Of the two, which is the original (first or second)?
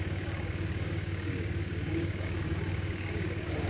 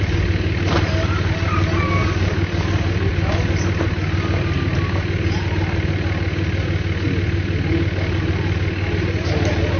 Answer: second